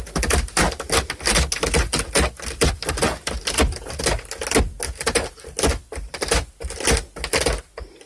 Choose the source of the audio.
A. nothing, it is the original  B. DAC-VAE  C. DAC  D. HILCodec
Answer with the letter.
A